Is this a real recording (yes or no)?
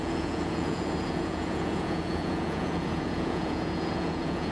no